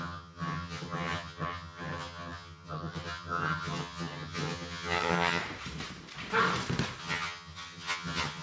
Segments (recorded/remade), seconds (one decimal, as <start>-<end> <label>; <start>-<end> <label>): 0.0-5.4 remade; 5.4-7.0 recorded; 7.0-8.4 remade